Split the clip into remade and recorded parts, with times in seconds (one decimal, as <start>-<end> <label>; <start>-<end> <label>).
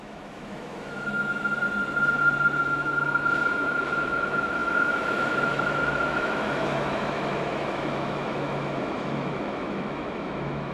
0.0-1.6 remade; 1.6-2.6 recorded; 2.6-10.7 remade